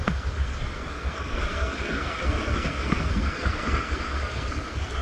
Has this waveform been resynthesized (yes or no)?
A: yes